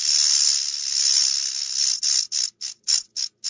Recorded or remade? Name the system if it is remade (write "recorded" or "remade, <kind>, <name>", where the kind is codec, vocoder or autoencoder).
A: recorded